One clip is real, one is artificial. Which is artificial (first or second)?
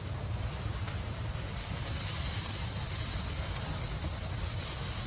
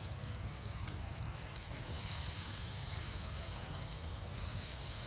second